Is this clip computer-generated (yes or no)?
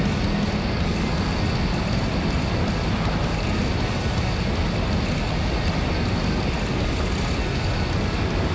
no